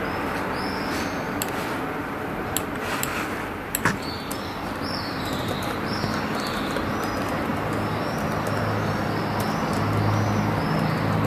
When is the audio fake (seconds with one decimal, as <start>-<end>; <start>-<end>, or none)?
none